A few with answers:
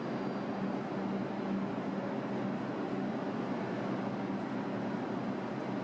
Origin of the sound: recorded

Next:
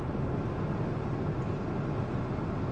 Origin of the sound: recorded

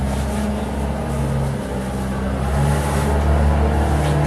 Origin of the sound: recorded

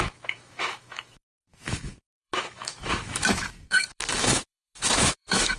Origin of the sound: remade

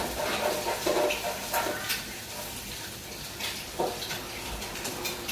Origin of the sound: recorded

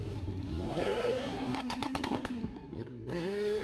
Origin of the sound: remade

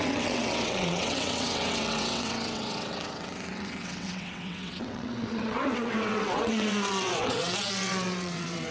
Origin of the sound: remade